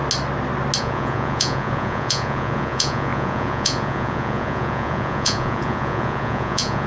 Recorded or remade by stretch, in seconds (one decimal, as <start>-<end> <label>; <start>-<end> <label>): 0.0-0.8 recorded; 0.8-6.9 remade